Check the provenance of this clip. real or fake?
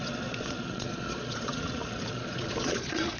fake